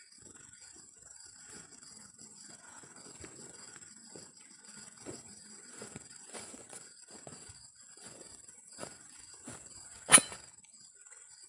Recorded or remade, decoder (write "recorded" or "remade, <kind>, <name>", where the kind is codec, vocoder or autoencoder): remade, vocoder, Vocos